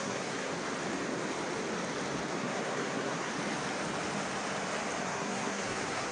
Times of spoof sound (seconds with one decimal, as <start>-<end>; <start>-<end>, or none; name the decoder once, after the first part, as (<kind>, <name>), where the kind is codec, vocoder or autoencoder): 0.0-0.5 (codec, SNAC); 2.3-3.3; 5.0-6.1